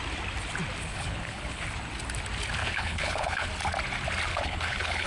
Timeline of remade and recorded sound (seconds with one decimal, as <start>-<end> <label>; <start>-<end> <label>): 0.0-0.9 recorded; 0.9-1.6 remade; 1.6-2.6 recorded; 2.6-3.5 remade; 3.5-4.3 recorded; 4.3-5.1 remade